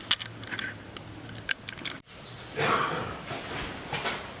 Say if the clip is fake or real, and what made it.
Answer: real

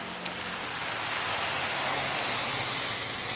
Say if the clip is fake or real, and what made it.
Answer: real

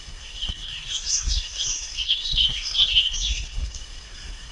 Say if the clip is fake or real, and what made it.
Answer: fake, codec, SNAC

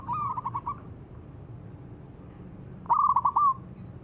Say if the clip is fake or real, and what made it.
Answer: real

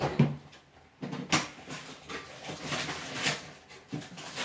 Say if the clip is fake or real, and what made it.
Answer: real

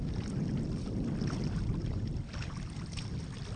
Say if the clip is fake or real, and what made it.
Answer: real